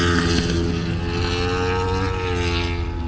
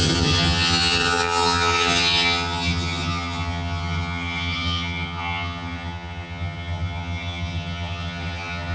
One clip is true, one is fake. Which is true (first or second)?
first